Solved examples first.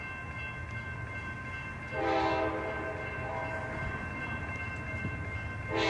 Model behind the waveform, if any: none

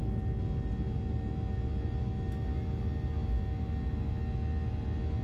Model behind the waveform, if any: none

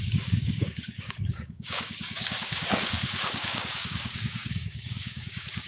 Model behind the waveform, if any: codec, DAC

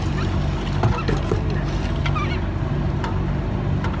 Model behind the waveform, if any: none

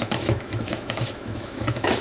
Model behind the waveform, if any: autoencoder, DAC-VAE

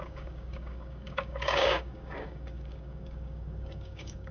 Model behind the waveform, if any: codec, DAC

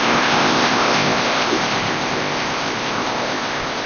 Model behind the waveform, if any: codec, ZipCodec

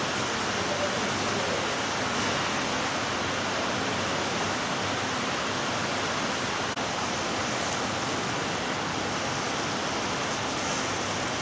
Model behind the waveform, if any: none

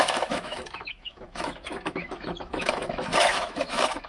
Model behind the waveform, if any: autoencoder, DAC-VAE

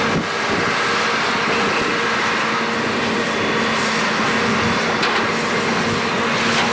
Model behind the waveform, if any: none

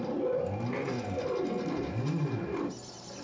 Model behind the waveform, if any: none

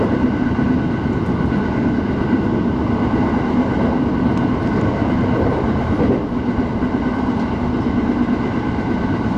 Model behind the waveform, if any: none